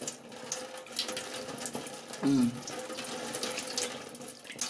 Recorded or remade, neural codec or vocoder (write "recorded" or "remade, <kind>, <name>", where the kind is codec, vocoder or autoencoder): recorded